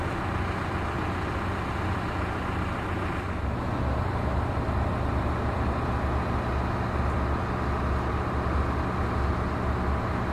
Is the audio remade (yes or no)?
no